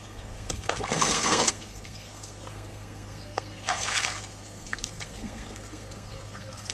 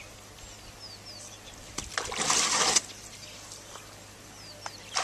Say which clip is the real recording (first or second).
second